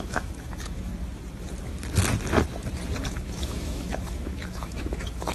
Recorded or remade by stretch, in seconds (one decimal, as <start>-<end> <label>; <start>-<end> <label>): 0.0-0.9 remade; 0.9-3.1 recorded; 3.1-5.3 remade